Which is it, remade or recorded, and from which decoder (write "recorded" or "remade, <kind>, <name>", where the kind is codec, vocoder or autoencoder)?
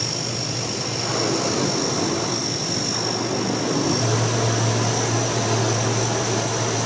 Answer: recorded